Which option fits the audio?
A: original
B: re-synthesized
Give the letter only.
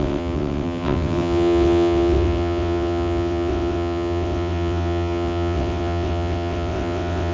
B